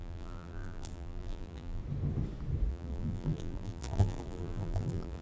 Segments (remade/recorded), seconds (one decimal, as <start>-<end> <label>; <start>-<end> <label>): 0.0-1.8 remade; 1.8-2.7 recorded; 2.7-5.2 remade